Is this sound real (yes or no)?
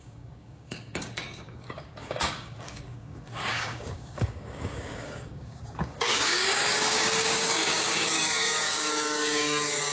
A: no